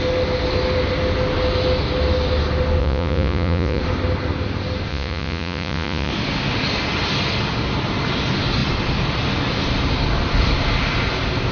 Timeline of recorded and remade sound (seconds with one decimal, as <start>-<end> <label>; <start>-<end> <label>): 0.0-2.8 recorded; 2.8-3.8 remade; 3.8-4.9 recorded; 4.9-6.1 remade; 6.1-11.5 recorded